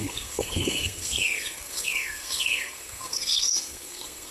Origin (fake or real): fake